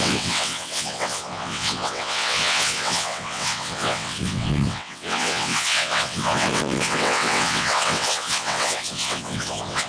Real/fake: fake